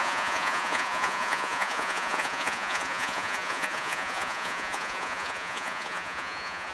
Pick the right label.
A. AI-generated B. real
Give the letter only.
A